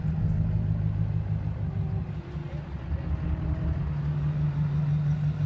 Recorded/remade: recorded